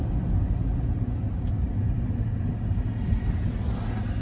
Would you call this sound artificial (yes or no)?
no